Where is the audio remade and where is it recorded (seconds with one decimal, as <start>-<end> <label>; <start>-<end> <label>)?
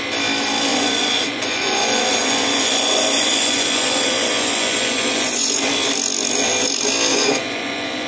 0.0-0.7 recorded; 0.7-5.6 remade; 5.6-7.1 recorded; 7.1-8.1 remade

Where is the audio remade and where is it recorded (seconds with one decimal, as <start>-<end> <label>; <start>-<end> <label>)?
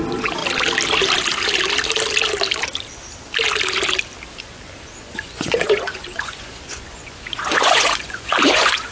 0.0-0.4 remade; 0.4-4.4 recorded; 4.4-8.9 remade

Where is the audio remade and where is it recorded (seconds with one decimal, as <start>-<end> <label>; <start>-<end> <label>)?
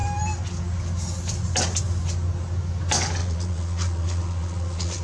0.0-3.2 recorded; 3.2-5.0 remade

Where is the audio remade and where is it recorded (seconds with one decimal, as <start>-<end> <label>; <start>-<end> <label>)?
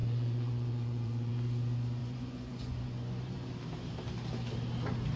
0.0-1.3 remade; 1.3-2.0 recorded; 2.0-3.5 remade; 3.5-5.2 recorded